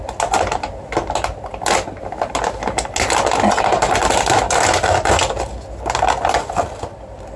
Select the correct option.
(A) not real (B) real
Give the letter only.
B